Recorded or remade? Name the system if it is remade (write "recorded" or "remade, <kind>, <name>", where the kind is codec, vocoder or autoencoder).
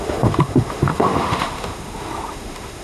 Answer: remade, autoencoder, DAC-VAE